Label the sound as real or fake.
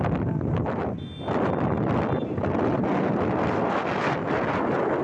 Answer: real